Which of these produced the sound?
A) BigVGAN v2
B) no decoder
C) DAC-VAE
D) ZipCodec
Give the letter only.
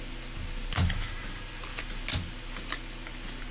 B